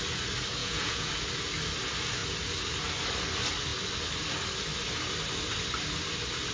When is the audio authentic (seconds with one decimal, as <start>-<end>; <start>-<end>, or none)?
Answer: 0.0-0.6; 1.1-6.5